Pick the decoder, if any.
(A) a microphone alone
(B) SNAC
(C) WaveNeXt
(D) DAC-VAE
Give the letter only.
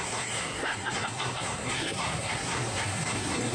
B